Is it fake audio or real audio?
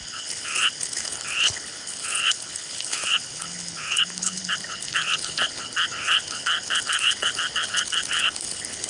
fake